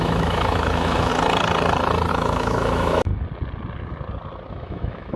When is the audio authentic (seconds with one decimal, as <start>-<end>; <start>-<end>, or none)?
1.1-2.1; 3.1-4.5